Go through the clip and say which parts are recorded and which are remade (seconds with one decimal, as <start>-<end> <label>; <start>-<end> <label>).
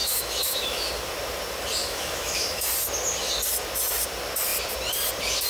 0.0-0.9 remade; 0.9-1.8 recorded; 1.8-2.7 remade; 2.7-5.5 recorded